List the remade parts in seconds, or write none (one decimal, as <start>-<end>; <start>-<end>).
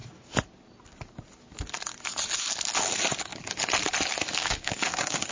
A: 4.4-5.3